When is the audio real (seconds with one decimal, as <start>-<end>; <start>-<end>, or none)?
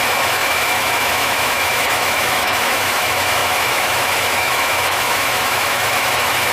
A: none